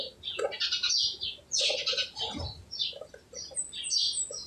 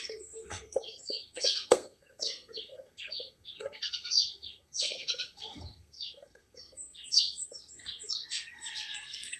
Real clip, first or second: first